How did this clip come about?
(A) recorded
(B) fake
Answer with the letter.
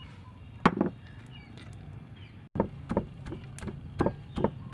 A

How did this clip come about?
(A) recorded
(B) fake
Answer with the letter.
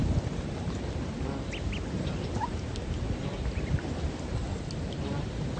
A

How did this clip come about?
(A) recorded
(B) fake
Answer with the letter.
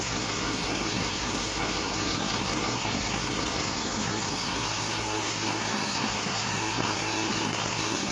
B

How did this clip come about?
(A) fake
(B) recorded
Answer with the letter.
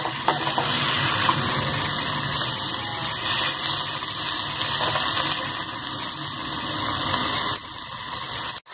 B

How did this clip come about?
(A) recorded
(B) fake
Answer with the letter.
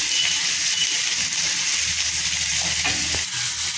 A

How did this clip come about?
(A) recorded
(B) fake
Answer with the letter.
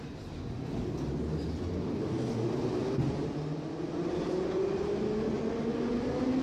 A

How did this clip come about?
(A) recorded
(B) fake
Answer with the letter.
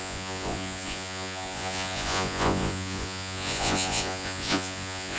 B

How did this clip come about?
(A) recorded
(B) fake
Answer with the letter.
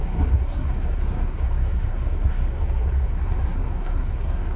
B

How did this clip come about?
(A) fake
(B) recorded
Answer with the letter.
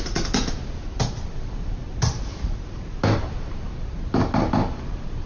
B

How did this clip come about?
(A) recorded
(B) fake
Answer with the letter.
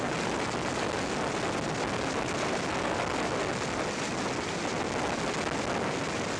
A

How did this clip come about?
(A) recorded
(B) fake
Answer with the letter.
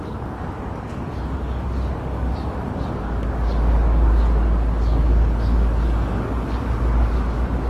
B